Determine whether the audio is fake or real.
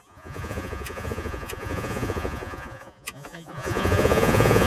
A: fake